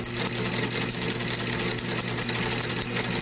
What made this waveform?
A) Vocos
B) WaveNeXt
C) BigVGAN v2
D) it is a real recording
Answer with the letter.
D